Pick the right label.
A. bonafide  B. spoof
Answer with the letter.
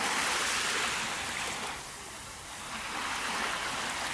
A